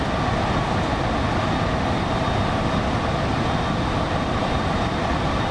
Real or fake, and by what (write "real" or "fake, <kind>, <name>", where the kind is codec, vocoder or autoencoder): real